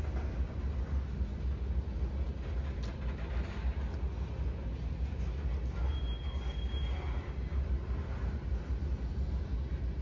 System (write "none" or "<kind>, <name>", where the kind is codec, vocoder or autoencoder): none